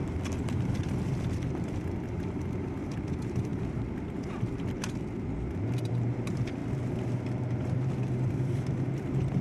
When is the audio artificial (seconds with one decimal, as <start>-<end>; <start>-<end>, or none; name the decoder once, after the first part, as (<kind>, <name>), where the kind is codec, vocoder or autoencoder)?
0.0-3.5 (vocoder, BigVGAN v2); 5.8-9.4